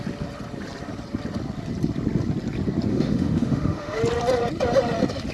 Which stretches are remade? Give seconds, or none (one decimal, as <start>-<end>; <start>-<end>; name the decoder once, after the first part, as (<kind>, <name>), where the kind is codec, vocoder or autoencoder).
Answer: 2.9-4.0 (autoencoder, DAC-VAE)